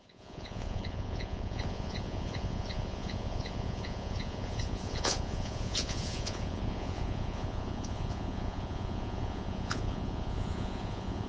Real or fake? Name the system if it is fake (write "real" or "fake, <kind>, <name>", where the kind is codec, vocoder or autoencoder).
fake, vocoder, Vocos